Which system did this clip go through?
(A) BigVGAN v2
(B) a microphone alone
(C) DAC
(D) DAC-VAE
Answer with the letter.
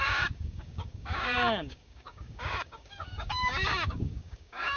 C